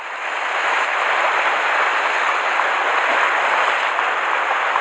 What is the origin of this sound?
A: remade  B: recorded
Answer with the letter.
B